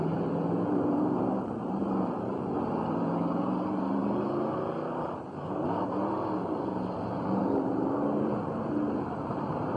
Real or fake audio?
fake